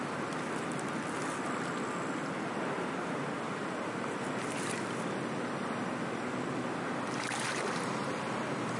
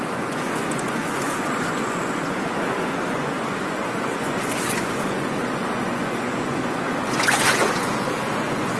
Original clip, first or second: first